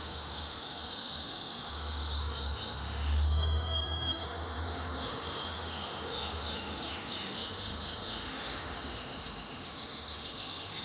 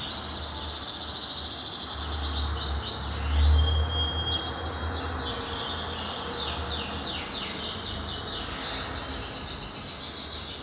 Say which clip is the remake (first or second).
first